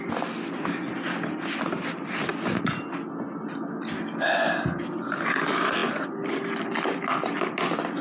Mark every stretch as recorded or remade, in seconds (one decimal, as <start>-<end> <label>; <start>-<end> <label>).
0.0-8.0 recorded